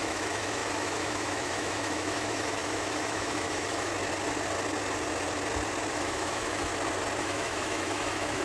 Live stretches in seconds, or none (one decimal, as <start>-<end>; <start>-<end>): 3.9-5.9; 6.7-7.2